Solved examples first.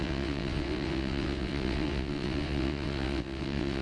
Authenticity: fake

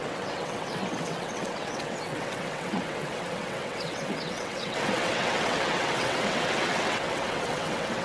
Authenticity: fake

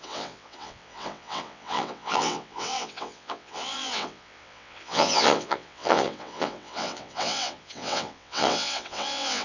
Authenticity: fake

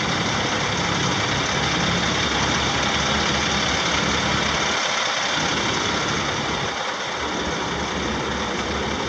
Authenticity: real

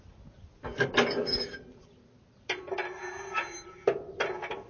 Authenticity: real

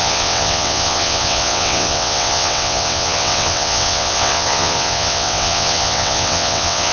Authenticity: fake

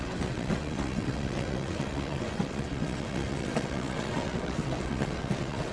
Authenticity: fake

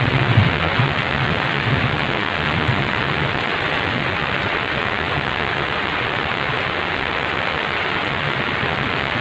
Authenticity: fake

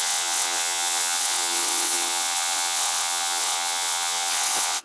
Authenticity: fake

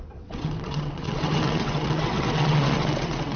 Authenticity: fake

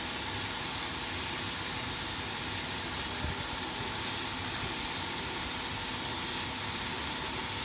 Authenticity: real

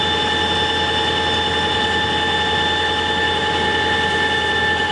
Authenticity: real